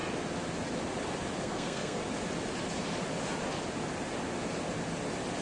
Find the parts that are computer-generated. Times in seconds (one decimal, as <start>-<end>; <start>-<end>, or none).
1.4-2.0

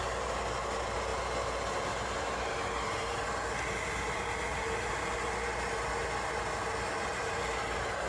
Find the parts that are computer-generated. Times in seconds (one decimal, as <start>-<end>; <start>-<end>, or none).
none